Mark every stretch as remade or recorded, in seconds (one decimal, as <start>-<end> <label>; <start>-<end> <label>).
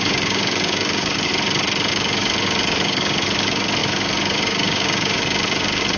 0.0-1.3 remade; 1.3-1.9 recorded; 1.9-6.0 remade